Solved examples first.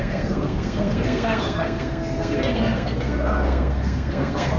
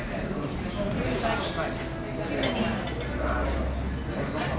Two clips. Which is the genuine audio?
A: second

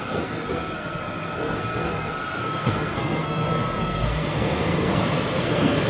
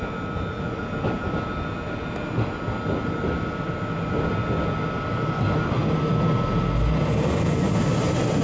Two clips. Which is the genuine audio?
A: second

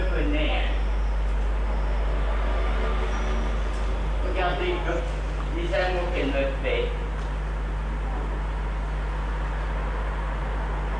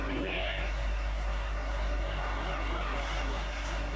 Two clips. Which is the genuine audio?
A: first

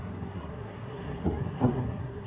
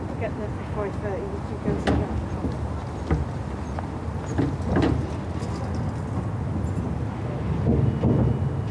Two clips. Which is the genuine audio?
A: second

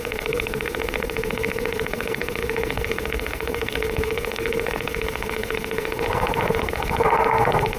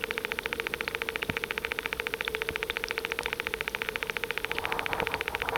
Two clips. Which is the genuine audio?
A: second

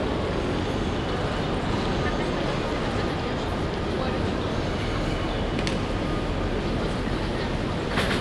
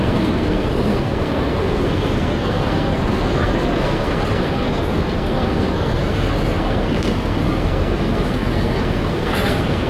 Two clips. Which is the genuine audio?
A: first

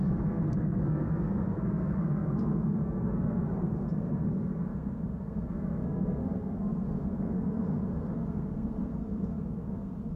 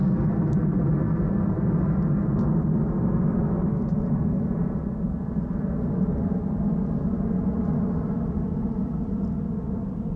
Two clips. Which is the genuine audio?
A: second